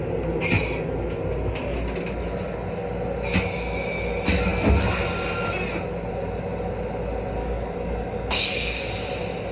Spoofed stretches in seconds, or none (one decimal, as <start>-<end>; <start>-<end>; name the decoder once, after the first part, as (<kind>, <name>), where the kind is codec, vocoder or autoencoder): 7.4-8.8 (codec, DAC)